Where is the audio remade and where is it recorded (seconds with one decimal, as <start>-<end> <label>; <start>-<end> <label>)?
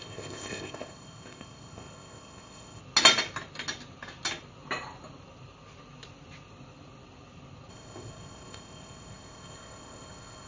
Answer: 0.0-2.8 remade; 2.8-7.7 recorded; 7.7-10.5 remade